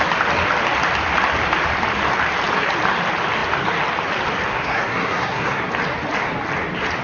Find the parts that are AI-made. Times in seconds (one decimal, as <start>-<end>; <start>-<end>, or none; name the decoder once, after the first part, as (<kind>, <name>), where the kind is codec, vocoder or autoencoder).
4.5-5.7 (codec, SNAC)